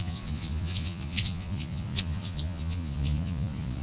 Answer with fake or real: fake